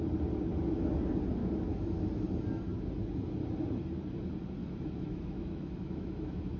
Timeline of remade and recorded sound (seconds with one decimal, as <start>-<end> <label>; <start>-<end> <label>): 0.0-1.4 recorded; 1.4-2.1 remade; 2.1-4.6 recorded; 4.6-6.6 remade